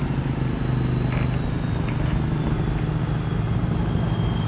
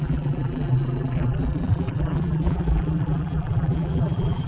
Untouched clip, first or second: first